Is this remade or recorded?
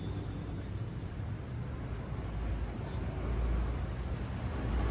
recorded